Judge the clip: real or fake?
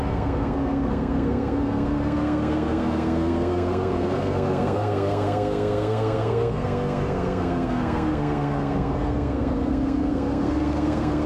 fake